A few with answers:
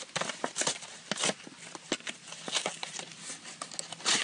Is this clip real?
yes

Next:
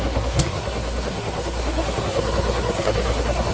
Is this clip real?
no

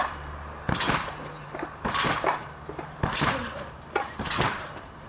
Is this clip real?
no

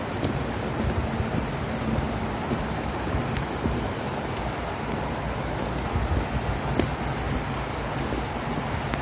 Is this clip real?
yes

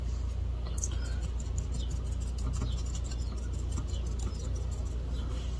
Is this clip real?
yes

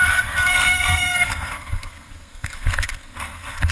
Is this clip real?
no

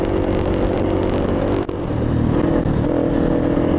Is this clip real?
yes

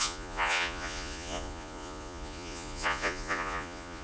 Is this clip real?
no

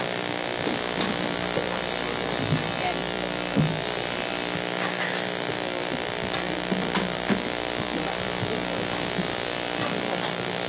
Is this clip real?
no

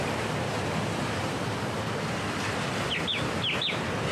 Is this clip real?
yes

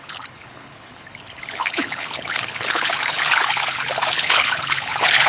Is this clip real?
no